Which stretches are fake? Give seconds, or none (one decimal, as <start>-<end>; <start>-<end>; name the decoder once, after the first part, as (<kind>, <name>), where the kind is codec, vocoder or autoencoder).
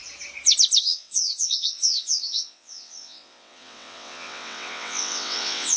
0.8-5.8 (vocoder, WaveNeXt)